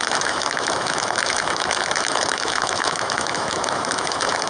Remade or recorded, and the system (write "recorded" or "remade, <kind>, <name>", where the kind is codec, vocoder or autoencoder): remade, autoencoder, DAC-VAE